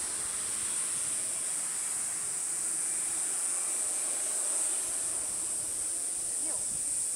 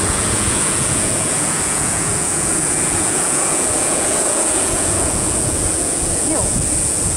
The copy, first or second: second